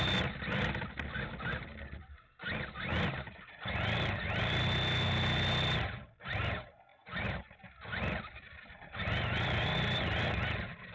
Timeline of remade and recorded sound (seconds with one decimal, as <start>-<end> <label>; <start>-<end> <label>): 0.0-10.9 recorded